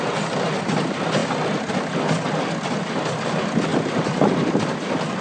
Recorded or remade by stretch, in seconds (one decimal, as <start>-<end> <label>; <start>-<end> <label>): 0.0-5.2 recorded